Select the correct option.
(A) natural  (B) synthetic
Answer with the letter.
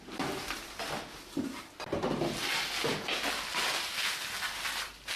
A